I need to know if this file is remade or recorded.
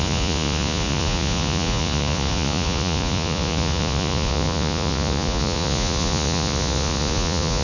remade